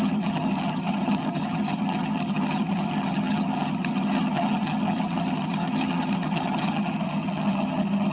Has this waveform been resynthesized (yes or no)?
yes